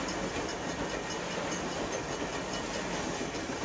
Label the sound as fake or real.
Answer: real